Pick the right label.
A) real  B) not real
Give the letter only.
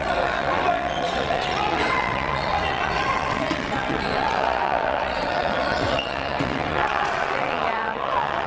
B